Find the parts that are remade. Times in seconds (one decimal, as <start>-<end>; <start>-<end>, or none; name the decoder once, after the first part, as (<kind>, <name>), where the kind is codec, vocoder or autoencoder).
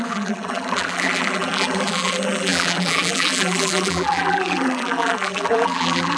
0.0-6.2 (vocoder, BigVGAN v2)